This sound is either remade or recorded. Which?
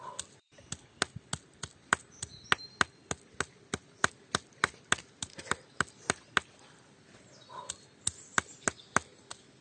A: recorded